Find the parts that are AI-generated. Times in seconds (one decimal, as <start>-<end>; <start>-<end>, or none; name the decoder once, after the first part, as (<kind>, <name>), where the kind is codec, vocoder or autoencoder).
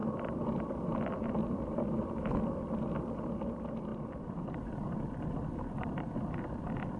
none